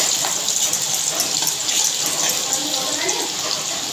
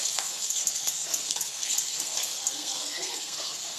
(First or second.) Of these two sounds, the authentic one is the first